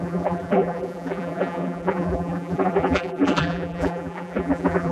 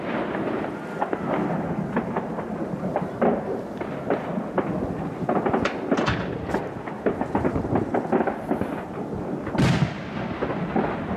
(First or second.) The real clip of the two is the second